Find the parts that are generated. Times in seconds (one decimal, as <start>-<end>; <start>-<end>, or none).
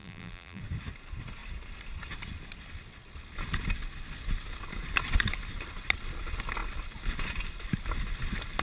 0.0-0.6